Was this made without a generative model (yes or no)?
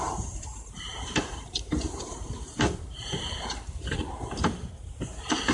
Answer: no